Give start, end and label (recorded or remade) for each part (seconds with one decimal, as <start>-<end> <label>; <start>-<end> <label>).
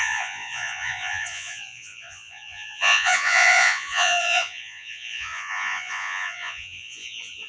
0.0-7.5 remade